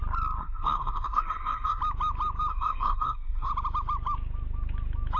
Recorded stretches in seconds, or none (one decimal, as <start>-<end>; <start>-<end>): 0.0-0.4; 1.8-2.5; 3.5-5.2